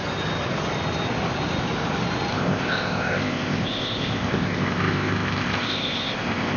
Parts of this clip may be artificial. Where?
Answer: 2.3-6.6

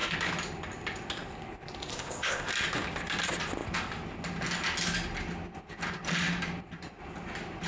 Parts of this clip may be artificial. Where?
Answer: 1.9-2.5

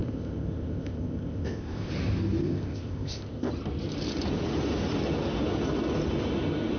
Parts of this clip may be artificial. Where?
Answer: 0.0-1.9; 2.4-3.5

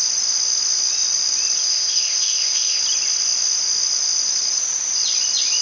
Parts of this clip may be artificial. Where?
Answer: 1.6-2.8

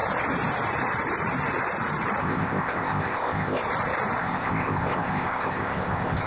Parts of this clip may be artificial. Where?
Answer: 2.2-3.6; 4.2-6.3

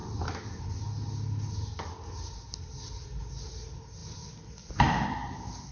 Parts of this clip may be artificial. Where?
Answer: none

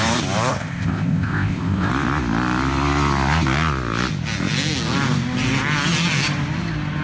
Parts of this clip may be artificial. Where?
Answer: 0.5-1.9